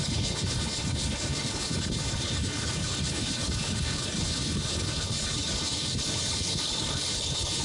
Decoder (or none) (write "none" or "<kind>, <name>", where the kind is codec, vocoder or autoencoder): codec, HILCodec